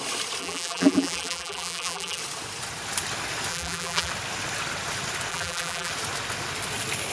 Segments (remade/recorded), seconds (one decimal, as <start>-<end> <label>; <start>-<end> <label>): 0.0-0.4 recorded; 0.4-2.2 remade; 2.2-3.5 recorded; 3.5-4.1 remade; 4.1-5.3 recorded; 5.3-5.9 remade; 5.9-7.1 recorded